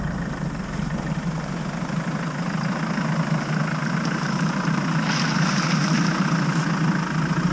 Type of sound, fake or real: real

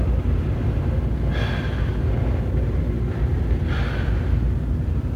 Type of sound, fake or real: real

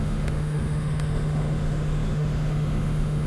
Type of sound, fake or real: fake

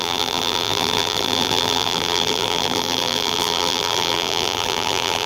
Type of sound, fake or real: fake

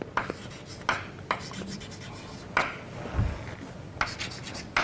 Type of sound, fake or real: real